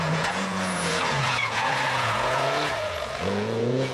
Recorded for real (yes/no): no